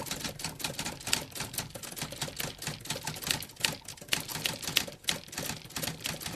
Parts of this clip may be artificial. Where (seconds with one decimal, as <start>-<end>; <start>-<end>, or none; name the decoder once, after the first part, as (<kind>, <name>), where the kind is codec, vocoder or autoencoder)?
none